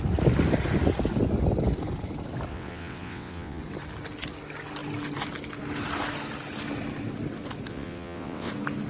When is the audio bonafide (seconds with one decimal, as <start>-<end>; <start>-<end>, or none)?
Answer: 0.0-2.5; 3.6-7.7; 8.5-8.9